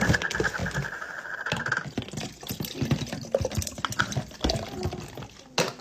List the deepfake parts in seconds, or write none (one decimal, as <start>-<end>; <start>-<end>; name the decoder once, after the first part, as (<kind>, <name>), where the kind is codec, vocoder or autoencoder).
none